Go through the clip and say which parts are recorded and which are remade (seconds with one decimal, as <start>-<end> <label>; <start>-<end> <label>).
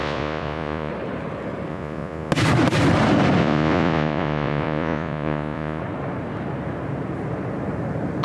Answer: 0.0-0.9 remade; 0.9-1.7 recorded; 1.7-2.3 remade; 2.3-3.4 recorded; 3.4-5.8 remade; 5.8-8.2 recorded